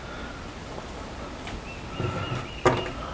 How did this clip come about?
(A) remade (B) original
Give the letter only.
B